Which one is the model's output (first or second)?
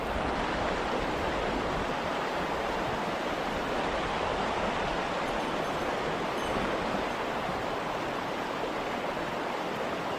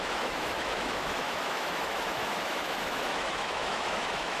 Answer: second